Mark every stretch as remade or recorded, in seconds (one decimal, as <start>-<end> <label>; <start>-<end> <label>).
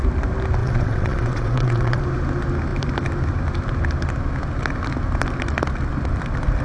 0.0-0.6 recorded; 0.6-2.0 remade; 2.0-6.6 recorded